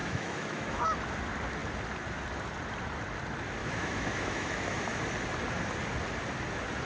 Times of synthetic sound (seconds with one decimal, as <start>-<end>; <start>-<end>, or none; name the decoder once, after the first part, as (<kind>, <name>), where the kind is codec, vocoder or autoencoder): 0.0-0.8 (autoencoder, DAC-VAE); 3.6-5.0